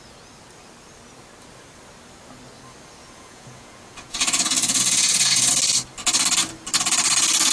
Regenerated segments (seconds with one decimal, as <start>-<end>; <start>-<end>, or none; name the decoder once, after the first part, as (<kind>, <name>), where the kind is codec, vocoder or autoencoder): 3.0-5.5 (vocoder, Vocos)